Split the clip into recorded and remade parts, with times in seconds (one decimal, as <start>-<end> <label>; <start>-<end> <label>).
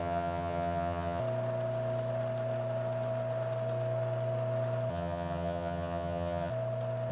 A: 0.0-1.2 remade; 1.2-4.9 recorded; 4.9-6.5 remade; 6.5-7.1 recorded